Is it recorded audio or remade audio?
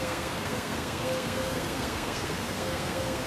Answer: remade